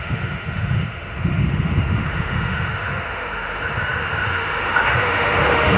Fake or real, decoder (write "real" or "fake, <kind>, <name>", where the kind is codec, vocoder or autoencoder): fake, autoencoder, DAC-VAE